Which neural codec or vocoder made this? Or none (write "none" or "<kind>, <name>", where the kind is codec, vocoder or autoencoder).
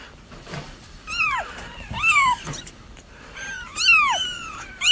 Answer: vocoder, BigVGAN v2